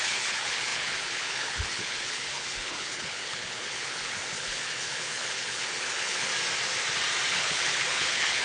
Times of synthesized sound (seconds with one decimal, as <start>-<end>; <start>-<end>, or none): 0.0-6.3; 7.3-8.4